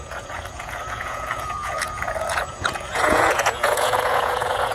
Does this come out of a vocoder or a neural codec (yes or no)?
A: yes